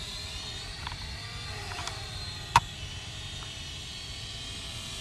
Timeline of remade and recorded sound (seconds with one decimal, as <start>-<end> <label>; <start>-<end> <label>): 0.0-0.5 recorded; 0.5-3.5 remade; 3.5-3.9 recorded; 3.9-5.0 remade